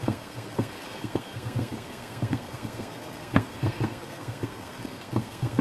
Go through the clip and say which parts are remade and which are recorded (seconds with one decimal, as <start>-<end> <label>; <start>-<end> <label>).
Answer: 0.0-5.6 remade